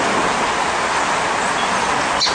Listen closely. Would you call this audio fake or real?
real